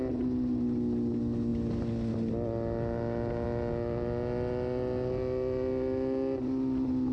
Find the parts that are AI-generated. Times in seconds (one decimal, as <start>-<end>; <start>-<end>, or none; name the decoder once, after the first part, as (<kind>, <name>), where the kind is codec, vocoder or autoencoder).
none